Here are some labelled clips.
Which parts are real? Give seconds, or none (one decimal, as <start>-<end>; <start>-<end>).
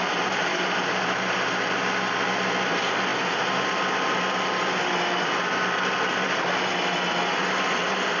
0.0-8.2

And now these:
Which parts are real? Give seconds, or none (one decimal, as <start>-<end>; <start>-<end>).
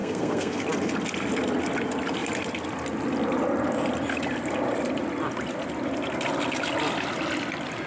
0.6-7.9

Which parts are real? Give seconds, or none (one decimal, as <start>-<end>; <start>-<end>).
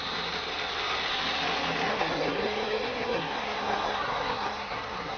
0.0-1.9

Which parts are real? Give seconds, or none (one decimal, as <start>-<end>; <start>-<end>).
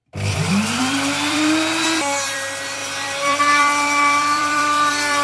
none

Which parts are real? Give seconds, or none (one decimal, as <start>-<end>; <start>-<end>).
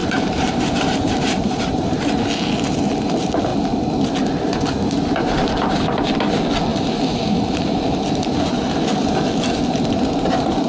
2.0-10.7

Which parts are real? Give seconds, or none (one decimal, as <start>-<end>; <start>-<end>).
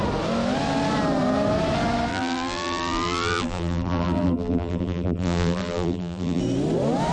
0.0-2.1; 6.4-7.1